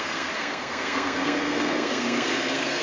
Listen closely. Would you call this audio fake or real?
fake